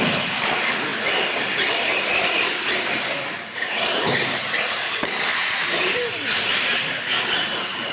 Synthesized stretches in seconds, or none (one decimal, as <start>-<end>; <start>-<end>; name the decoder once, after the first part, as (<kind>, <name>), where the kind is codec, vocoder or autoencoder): 0.0-0.9 (vocoder, BigVGAN v2); 3.5-7.9